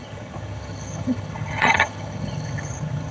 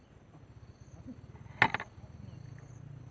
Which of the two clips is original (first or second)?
second